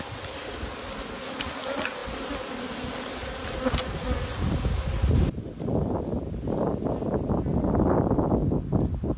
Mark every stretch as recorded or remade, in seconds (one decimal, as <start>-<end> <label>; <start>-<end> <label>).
0.0-9.2 recorded